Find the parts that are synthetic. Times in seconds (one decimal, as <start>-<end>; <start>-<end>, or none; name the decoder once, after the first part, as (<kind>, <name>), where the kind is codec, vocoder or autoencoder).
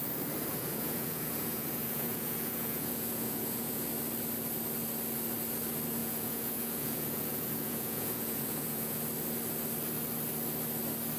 0.5-3.9 (vocoder, Vocos); 6.0-9.0